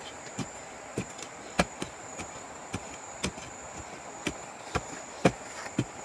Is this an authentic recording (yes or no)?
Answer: yes